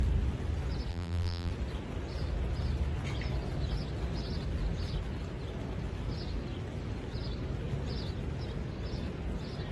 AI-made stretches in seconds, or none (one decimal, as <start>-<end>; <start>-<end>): 0.9-1.5